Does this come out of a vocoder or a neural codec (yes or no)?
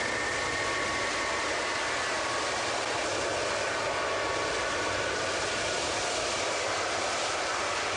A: no